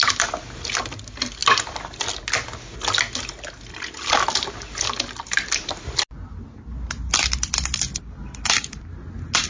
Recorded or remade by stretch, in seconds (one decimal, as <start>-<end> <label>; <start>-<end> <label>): 0.0-9.5 recorded